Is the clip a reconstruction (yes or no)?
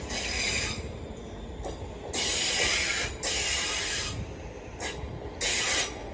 no